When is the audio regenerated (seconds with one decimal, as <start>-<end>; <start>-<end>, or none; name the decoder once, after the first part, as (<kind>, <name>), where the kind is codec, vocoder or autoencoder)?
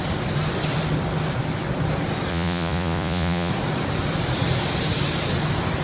2.3-3.5 (vocoder, Vocos)